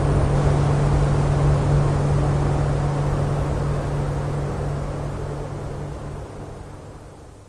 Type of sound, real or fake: real